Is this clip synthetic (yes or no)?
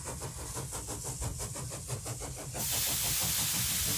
no